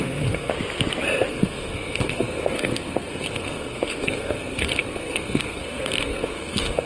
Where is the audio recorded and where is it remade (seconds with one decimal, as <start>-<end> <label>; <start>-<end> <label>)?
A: 0.0-0.5 remade; 0.5-1.3 recorded; 1.3-6.9 remade